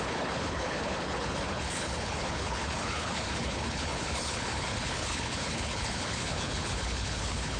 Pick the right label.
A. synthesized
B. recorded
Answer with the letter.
A